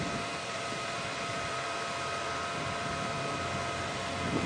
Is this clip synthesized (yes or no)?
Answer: yes